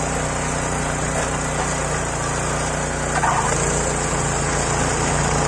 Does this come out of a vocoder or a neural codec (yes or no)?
no